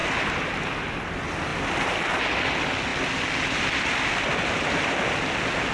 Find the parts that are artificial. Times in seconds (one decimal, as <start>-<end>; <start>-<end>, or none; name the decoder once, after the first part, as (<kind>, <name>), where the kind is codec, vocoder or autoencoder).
none